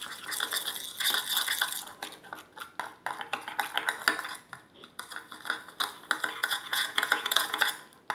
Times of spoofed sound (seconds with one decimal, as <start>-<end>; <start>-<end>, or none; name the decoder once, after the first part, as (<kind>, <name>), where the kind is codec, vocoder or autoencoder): 6.4-7.6 (vocoder, Vocos)